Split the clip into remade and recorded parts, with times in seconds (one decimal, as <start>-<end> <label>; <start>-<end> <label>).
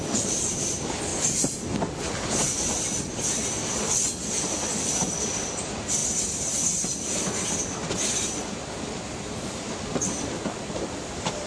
0.0-11.5 recorded